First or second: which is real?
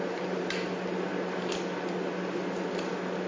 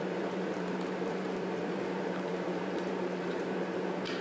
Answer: first